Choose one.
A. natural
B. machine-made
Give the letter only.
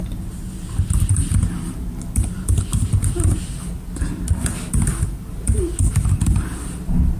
A